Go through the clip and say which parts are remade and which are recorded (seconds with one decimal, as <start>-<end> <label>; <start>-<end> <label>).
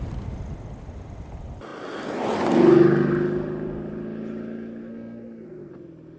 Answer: 0.0-4.8 recorded; 4.8-5.7 remade; 5.7-6.2 recorded